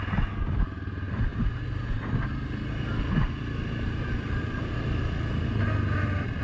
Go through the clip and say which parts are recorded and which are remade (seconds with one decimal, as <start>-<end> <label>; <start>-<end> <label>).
0.0-6.4 recorded